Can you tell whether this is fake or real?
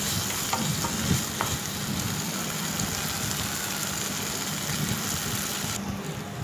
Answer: real